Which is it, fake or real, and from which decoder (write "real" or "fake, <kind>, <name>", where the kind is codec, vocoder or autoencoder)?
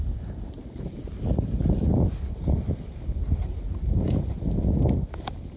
real